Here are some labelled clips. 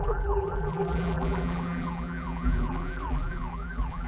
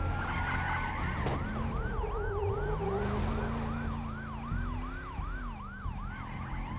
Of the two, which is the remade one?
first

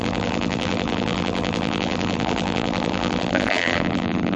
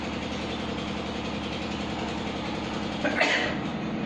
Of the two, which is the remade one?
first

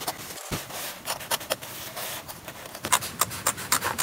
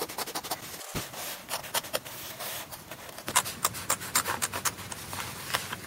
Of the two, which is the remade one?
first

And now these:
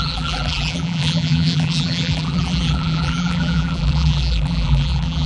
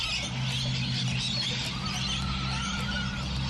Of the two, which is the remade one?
first